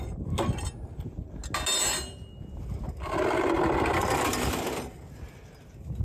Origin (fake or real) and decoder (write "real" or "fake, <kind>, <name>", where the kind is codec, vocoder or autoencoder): real